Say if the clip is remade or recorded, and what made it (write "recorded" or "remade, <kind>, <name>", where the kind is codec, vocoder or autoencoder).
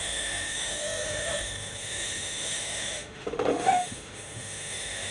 remade, autoencoder, DAC-VAE